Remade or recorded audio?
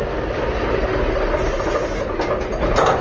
recorded